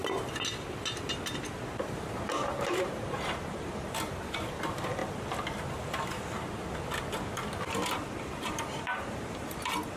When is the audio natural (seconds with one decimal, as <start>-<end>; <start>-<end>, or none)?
0.0-1.9; 5.0-7.7